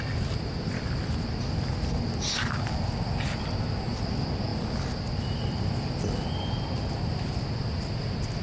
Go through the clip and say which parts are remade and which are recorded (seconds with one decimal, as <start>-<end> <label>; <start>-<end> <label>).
0.0-8.4 recorded

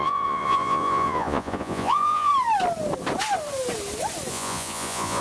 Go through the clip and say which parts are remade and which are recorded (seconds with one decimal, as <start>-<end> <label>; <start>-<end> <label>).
0.0-2.3 remade; 2.3-4.3 recorded; 4.3-5.2 remade

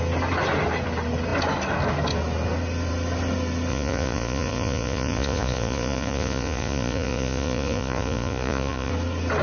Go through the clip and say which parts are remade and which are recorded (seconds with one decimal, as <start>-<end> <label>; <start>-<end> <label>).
0.0-3.7 recorded; 3.7-8.9 remade; 8.9-9.4 recorded

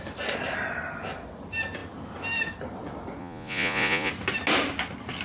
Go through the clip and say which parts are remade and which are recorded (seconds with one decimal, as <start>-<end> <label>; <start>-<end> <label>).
0.0-3.2 recorded; 3.2-4.1 remade; 4.1-5.2 recorded

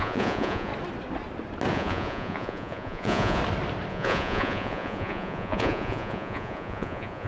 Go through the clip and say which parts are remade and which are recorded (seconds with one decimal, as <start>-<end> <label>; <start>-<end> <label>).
0.0-0.7 remade; 0.7-1.7 recorded; 1.7-3.4 remade; 3.4-3.9 recorded; 3.9-7.3 remade

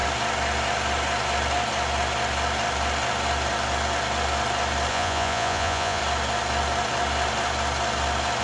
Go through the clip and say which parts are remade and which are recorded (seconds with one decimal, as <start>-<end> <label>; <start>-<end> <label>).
0.0-4.9 recorded; 4.9-6.0 remade; 6.0-8.4 recorded

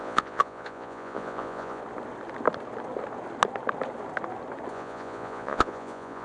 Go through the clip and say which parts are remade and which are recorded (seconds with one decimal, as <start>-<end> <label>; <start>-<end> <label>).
0.0-1.8 remade; 1.8-4.7 recorded; 4.7-6.2 remade